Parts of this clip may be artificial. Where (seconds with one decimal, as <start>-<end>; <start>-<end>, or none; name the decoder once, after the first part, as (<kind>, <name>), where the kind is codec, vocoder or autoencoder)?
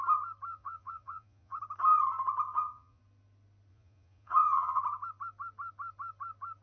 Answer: 0.5-1.6 (vocoder, Vocos); 2.5-3.0; 3.7-4.8